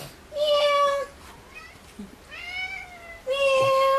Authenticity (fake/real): real